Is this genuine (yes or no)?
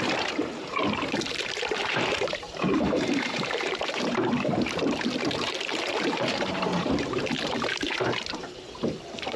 no